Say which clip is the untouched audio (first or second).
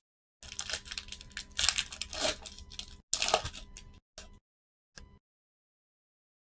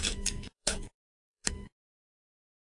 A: first